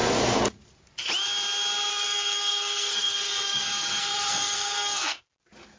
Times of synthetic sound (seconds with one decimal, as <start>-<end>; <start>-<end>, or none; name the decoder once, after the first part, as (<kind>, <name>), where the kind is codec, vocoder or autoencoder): 1.9-5.2 (codec, SNAC)